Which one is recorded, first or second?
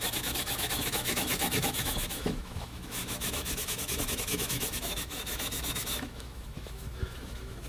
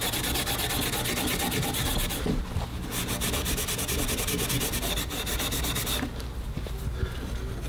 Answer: second